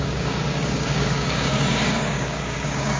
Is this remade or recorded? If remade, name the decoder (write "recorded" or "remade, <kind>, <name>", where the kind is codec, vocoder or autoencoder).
remade, codec, DAC